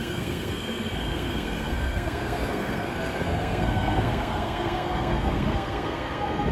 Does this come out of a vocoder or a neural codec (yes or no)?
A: yes